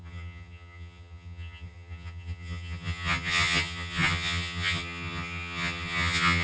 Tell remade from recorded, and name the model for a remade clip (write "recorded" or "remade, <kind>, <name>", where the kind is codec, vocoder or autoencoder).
remade, vocoder, HiFi-GAN